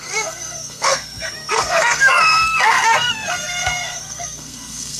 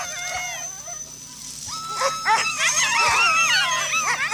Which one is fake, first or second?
first